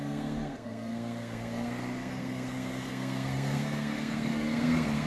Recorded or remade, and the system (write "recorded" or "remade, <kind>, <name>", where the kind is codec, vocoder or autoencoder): remade, codec, SNAC